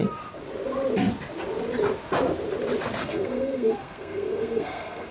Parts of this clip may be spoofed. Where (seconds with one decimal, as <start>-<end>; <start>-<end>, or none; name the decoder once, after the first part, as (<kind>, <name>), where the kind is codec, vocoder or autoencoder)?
3.0-5.1 (codec, SNAC)